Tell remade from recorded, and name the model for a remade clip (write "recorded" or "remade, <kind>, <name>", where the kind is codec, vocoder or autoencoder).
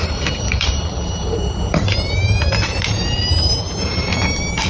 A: remade, vocoder, BigVGAN v2